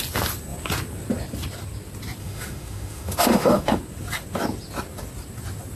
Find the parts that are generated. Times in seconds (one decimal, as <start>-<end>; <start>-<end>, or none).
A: 2.2-3.8